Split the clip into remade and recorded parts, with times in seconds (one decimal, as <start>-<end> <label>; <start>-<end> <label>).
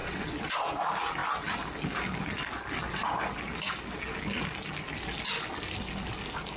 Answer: 0.0-0.5 remade; 0.5-6.6 recorded